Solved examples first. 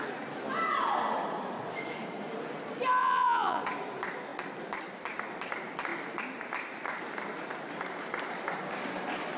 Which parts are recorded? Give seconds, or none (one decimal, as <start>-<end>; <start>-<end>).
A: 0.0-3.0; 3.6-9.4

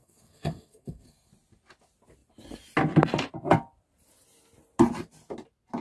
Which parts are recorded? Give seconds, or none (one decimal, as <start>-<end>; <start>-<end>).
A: 1.3-5.8

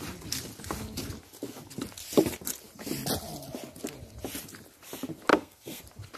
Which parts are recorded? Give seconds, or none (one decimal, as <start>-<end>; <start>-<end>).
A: 0.0-5.3; 5.8-6.2

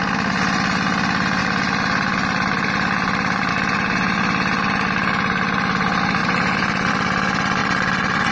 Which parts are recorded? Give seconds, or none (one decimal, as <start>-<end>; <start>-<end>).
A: 0.0-6.2; 6.9-7.6

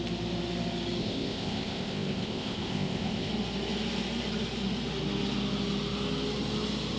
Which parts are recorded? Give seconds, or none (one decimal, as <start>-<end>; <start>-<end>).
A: 0.0-1.0; 3.3-7.0

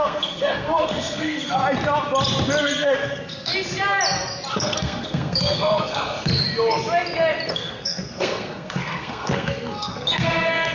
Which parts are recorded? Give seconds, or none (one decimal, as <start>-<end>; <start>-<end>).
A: 1.6-2.6; 3.5-4.5; 6.3-7.5